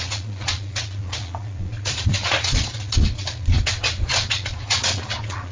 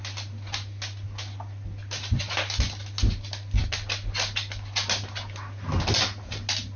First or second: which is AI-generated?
first